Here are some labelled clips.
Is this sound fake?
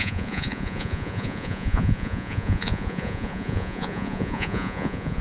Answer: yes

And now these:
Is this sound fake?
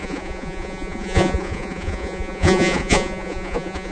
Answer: yes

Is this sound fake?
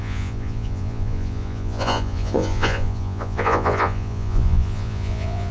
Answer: yes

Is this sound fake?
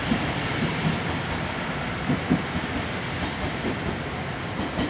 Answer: no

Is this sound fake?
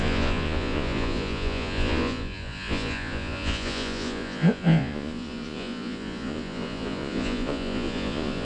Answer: yes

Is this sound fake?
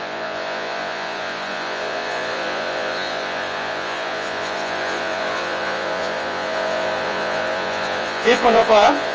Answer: yes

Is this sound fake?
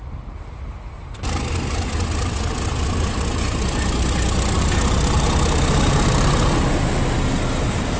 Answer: no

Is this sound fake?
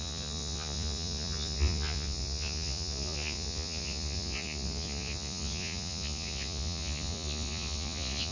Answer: yes